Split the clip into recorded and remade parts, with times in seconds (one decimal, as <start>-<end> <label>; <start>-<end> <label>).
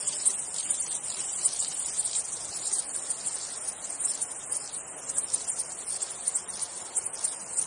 0.0-7.7 recorded